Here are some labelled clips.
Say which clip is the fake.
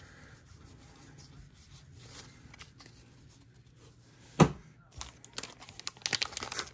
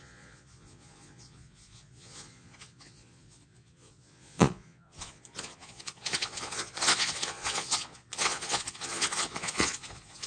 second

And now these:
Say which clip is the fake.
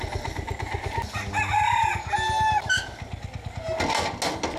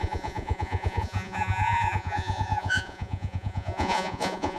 second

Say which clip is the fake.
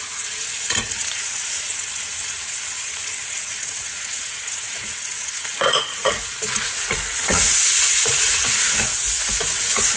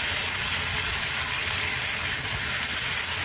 first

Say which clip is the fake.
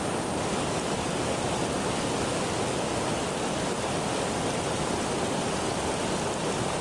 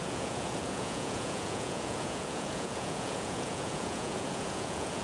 second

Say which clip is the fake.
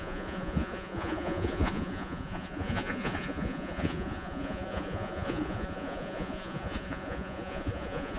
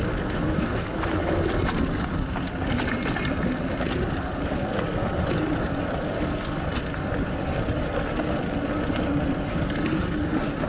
first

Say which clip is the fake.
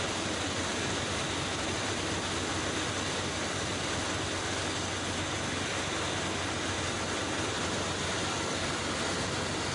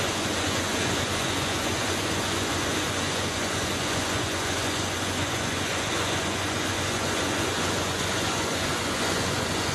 second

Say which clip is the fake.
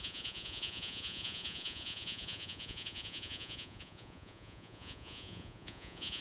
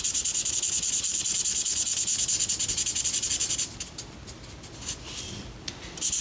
first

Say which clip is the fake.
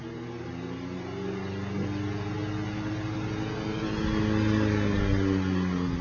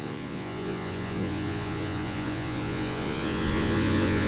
second